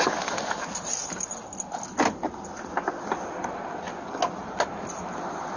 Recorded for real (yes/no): yes